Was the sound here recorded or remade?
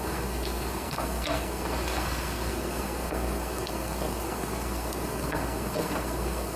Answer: remade